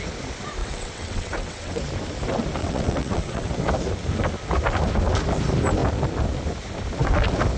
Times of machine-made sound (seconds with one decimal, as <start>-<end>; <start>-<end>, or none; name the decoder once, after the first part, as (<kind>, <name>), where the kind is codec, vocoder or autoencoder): 0.6-1.8 (vocoder, WaveNeXt); 2.6-3.5